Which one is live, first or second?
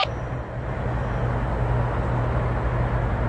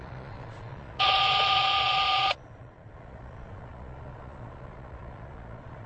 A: first